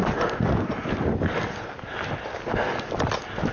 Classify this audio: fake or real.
real